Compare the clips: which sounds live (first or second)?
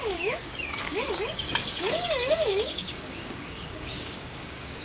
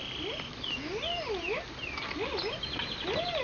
second